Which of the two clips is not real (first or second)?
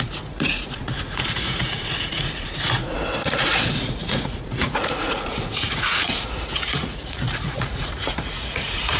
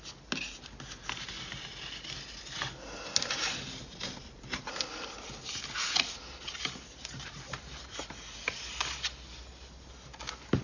first